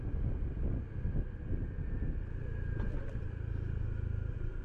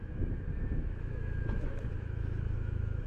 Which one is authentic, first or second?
first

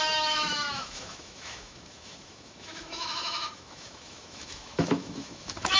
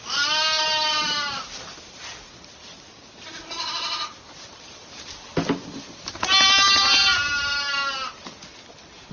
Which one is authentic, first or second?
second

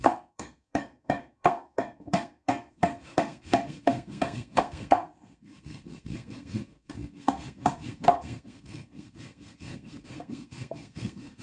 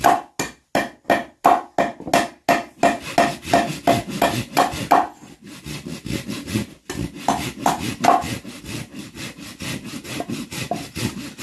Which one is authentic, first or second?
second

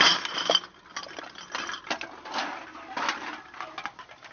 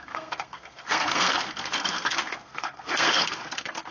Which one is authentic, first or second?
first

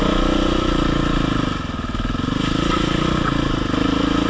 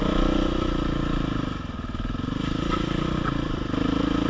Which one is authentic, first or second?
first